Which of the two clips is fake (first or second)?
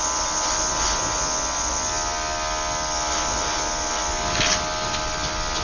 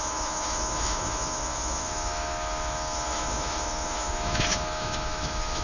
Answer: second